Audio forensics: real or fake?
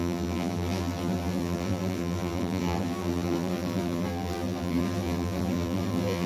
fake